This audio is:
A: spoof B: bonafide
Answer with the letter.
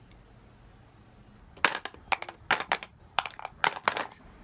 B